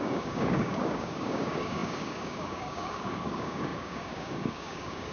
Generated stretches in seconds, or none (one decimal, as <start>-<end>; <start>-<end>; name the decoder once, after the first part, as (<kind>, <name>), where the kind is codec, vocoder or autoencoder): 0.0-5.1 (codec, DAC)